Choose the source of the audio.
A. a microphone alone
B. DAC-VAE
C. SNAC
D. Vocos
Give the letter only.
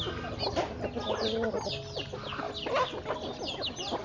A